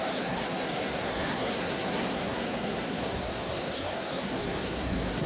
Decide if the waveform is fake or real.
fake